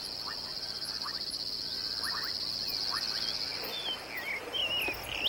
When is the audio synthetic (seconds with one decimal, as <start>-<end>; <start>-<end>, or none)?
none

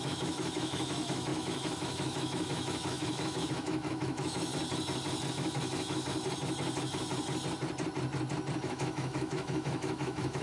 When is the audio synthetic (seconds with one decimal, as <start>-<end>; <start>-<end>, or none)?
0.0-4.5; 5.3-6.1; 8.6-10.4

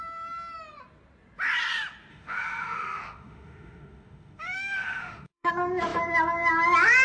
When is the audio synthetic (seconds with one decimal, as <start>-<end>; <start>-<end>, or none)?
2.1-5.5

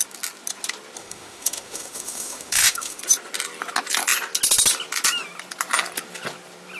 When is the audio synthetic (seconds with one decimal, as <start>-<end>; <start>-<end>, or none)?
1.0-3.0

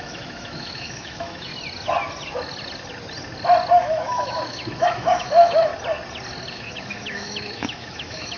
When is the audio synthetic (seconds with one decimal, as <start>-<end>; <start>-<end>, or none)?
0.0-1.5; 3.8-5.7; 6.5-8.4

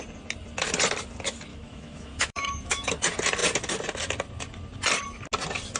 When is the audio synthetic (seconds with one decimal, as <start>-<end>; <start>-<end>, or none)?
1.5-2.9

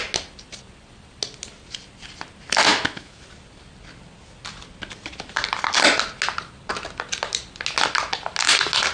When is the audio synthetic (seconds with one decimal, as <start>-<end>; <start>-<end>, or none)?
2.7-3.2

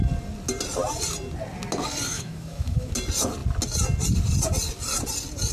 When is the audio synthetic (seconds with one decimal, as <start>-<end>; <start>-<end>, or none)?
2.1-2.9